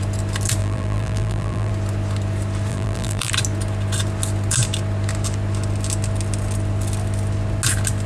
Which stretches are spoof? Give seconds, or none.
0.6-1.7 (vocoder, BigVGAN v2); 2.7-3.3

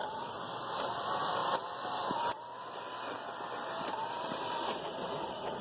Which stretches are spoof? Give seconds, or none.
none

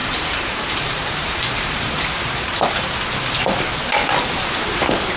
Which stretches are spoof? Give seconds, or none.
0.0-3.1 (vocoder, BigVGAN v2)

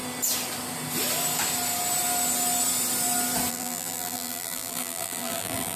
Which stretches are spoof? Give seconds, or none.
3.5-5.8 (vocoder, BigVGAN v2)